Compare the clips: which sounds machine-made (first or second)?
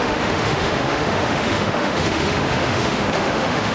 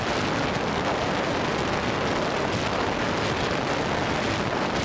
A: first